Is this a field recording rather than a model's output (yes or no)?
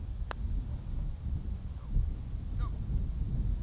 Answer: yes